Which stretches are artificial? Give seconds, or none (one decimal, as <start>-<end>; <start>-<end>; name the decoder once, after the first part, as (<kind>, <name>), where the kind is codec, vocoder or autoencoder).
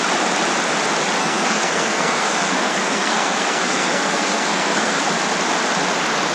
1.2-5.0 (codec, SNAC)